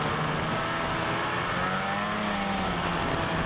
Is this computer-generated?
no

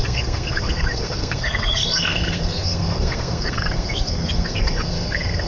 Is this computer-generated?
yes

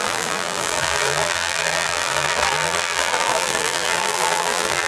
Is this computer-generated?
yes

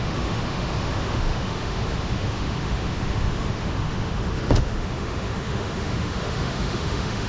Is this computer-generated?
yes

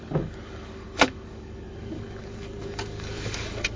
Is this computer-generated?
yes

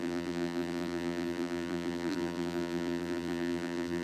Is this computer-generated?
yes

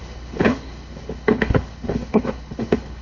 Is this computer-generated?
yes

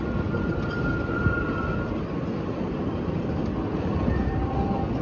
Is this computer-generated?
no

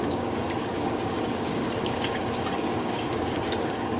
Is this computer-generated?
yes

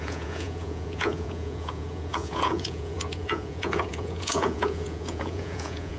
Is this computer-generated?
yes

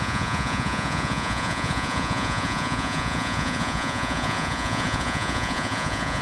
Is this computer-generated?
yes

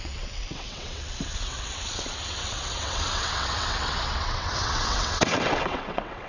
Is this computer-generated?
yes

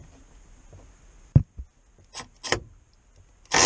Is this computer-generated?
no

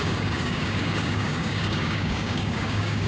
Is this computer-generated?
yes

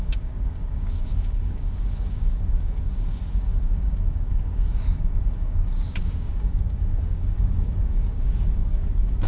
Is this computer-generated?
yes